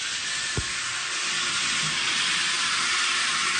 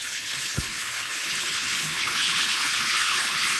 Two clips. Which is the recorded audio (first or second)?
first